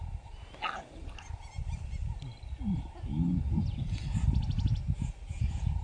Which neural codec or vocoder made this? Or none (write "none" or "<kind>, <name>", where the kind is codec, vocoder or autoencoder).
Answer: none